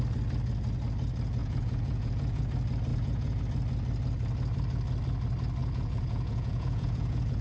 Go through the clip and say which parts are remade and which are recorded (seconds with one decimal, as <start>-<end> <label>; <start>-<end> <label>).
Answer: 0.0-1.4 recorded; 1.4-2.4 remade; 2.4-2.9 recorded; 2.9-3.4 remade; 3.4-5.6 recorded; 5.6-7.4 remade